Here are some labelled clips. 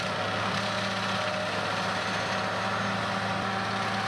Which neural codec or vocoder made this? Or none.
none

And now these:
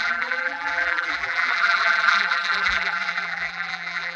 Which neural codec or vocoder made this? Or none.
vocoder, BigVGAN v2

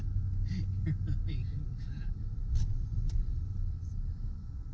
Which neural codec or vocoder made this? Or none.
none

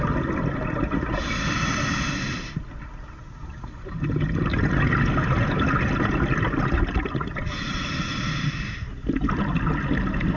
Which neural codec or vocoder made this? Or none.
none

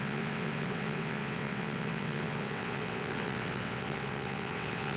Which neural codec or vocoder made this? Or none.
vocoder, WaveNeXt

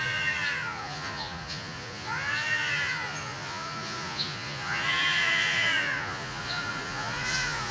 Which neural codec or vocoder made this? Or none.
vocoder, Vocos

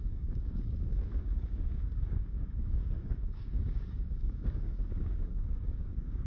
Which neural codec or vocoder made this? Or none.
codec, DAC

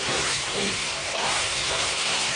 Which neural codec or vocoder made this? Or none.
codec, SNAC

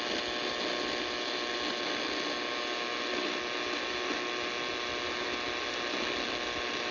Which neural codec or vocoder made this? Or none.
none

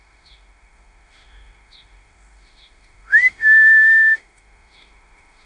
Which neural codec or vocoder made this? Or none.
autoencoder, DAC-VAE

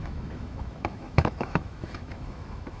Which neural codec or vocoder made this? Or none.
autoencoder, DAC-VAE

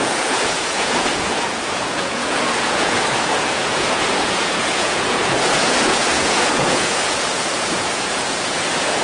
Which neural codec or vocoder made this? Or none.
vocoder, Vocos